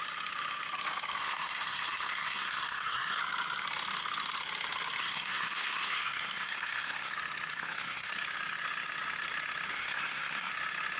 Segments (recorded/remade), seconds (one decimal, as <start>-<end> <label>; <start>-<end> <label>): 0.0-1.2 recorded; 1.2-3.2 remade; 3.2-5.0 recorded; 5.0-7.1 remade; 7.1-7.5 recorded; 7.5-8.1 remade; 8.1-9.7 recorded; 9.7-10.5 remade; 10.5-11.0 recorded